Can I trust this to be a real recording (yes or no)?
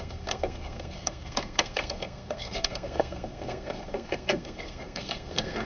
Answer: no